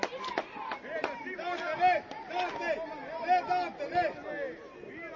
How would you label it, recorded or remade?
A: recorded